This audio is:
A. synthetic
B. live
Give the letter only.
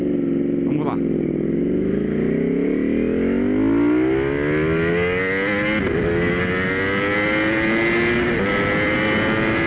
B